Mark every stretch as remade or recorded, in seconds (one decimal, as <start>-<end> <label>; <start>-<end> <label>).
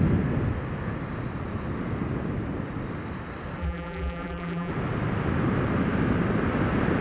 0.0-3.6 recorded; 3.6-4.7 remade; 4.7-7.0 recorded